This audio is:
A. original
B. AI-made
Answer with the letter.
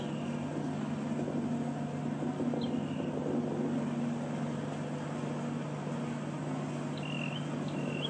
A